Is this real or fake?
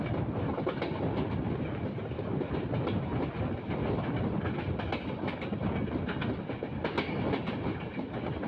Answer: real